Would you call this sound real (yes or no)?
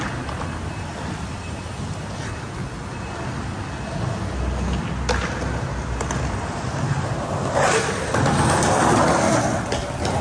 yes